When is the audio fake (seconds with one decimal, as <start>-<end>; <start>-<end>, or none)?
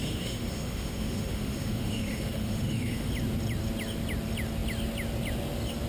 0.0-3.1